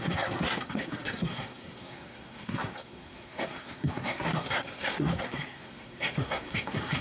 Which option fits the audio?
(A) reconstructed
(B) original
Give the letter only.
A